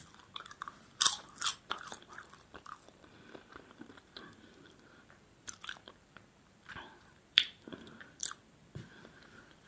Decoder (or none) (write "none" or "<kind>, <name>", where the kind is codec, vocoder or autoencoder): vocoder, BigVGAN v2